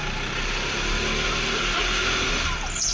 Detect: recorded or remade recorded